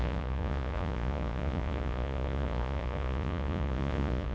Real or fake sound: fake